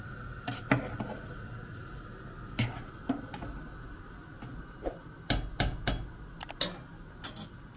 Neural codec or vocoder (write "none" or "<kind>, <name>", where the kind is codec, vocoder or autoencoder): none